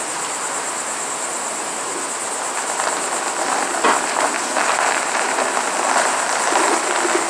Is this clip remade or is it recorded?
recorded